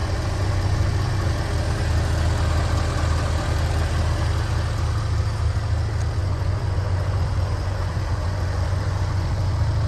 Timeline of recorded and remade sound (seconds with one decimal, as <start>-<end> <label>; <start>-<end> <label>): 0.0-1.3 remade; 1.3-6.2 recorded; 6.2-9.5 remade; 9.5-9.9 recorded